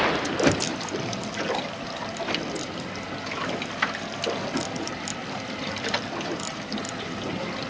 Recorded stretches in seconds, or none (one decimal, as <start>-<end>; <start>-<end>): 0.0-0.7; 2.8-5.2; 7.1-7.7